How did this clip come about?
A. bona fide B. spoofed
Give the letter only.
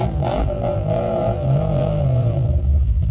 B